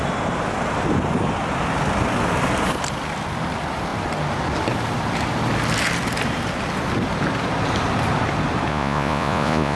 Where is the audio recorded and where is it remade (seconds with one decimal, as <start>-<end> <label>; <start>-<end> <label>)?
0.0-8.7 recorded; 8.7-9.8 remade